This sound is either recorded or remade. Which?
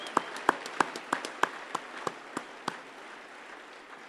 recorded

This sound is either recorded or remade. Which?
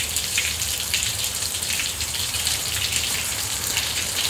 remade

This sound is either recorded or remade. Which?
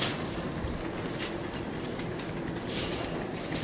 recorded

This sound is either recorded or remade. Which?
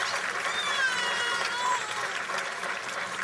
remade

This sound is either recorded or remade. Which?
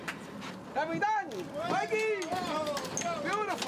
recorded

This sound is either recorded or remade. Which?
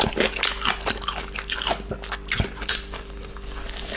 recorded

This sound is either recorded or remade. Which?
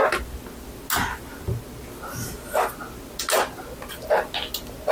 recorded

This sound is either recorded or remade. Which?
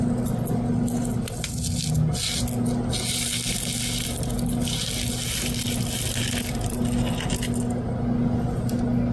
recorded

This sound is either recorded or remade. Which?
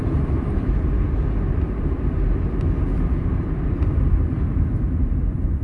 remade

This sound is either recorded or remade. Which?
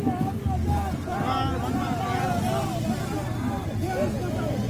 recorded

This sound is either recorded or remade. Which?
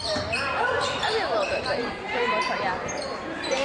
remade